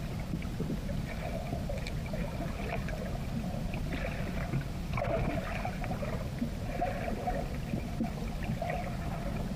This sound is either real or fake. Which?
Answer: real